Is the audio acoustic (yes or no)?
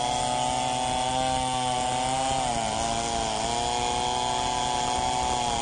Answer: yes